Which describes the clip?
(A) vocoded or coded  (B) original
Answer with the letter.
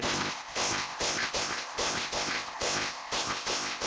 A